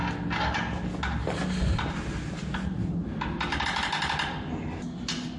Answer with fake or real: real